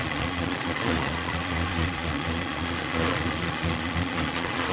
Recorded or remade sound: remade